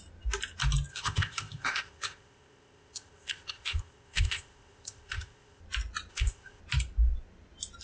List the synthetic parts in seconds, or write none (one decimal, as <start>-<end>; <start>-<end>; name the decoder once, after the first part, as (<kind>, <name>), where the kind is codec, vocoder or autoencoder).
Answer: 0.9-5.6 (codec, ZipCodec); 6.1-6.6